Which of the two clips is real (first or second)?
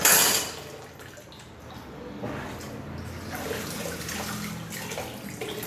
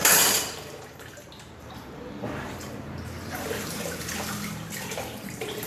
first